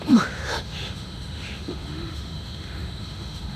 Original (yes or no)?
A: no